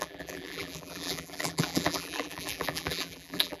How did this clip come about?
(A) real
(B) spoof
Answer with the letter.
B